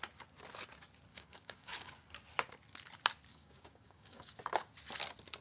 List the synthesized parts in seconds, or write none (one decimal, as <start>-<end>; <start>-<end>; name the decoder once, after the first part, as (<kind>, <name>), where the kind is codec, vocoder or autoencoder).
1.1-1.9 (codec, DAC); 3.3-4.3